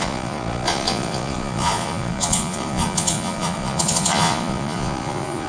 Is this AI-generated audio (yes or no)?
yes